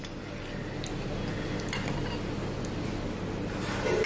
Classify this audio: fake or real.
real